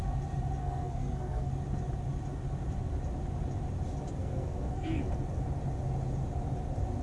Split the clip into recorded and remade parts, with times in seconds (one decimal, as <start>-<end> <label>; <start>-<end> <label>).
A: 0.0-0.6 recorded; 0.6-1.5 remade; 1.5-4.2 recorded; 4.2-5.0 remade; 5.0-7.0 recorded